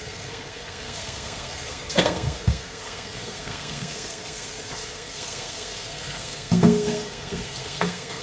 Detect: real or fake fake